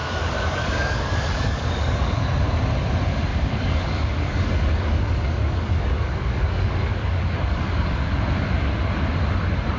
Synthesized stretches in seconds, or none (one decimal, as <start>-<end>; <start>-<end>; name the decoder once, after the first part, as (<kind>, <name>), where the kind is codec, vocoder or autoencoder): 0.0-2.2 (codec, DAC); 3.3-8.1